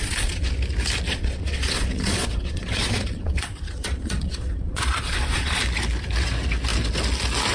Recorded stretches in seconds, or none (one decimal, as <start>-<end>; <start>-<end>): 0.5-1.1; 5.6-7.5